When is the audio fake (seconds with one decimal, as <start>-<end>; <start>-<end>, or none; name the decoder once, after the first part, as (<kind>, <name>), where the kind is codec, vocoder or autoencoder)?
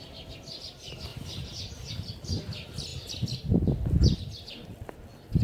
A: 1.1-1.9 (vocoder, BigVGAN v2)